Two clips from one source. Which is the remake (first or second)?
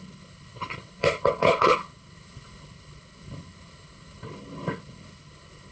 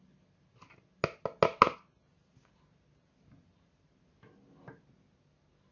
first